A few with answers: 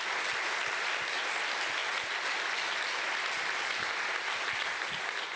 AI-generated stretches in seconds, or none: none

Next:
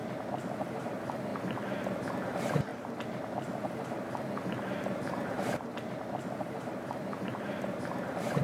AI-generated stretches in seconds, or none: 0.8-1.3 (vocoder, BigVGAN v2); 2.1-2.7; 4.6-5.7; 6.4-8.4

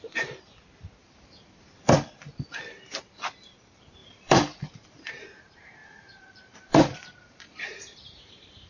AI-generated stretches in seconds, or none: 1.0-1.9 (vocoder, BigVGAN v2); 4.0-5.1; 5.8-8.7

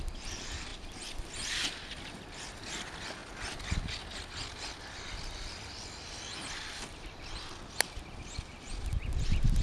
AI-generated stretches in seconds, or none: 0.0-0.7 (vocoder, BigVGAN v2); 1.8-3.2; 6.5-9.6

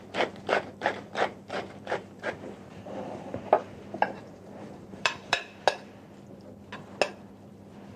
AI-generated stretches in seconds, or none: 0.7-5.4 (vocoder, BigVGAN v2)

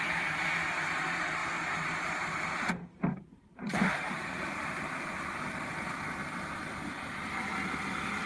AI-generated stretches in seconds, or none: 1.4-5.1 (vocoder, BigVGAN v2)

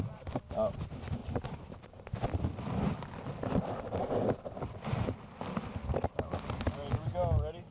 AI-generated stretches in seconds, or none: 1.2-3.2 (vocoder, BigVGAN v2); 4.0-5.3